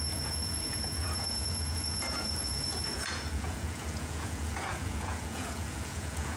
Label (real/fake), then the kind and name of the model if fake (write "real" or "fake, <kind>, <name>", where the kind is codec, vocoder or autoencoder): fake, vocoder, Vocos